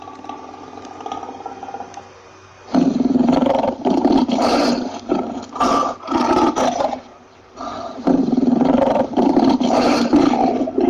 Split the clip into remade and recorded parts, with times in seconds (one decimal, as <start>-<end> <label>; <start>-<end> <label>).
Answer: 0.0-3.4 recorded; 3.4-4.4 remade; 4.4-7.1 recorded; 7.1-10.2 remade; 10.2-10.9 recorded